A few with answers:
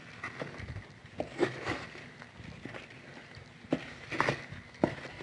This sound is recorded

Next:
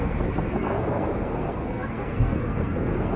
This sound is remade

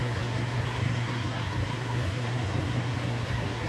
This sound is remade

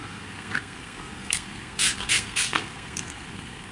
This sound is remade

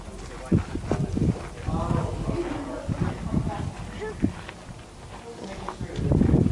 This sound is recorded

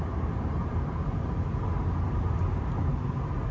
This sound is recorded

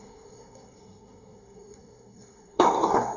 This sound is remade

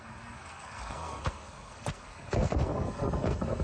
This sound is remade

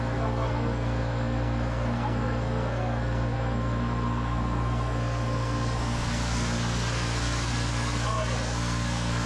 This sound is remade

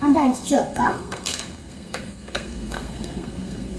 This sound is remade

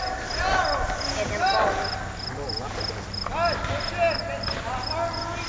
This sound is recorded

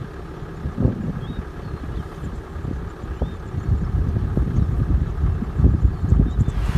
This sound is recorded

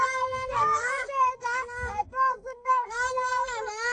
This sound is remade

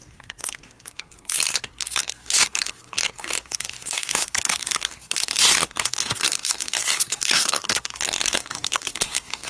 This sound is remade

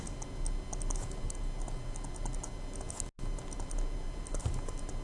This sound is recorded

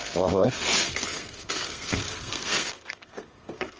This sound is remade